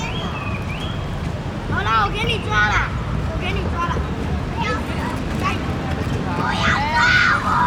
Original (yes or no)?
yes